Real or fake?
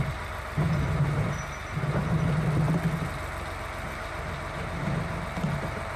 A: real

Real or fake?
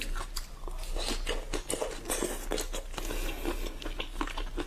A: real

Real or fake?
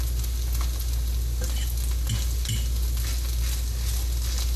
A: real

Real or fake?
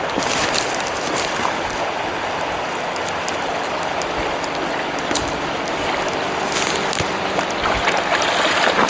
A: real